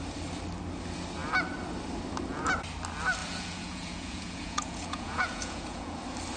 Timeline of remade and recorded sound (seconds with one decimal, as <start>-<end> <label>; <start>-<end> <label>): 0.0-3.2 recorded; 3.2-6.0 remade; 6.0-6.4 recorded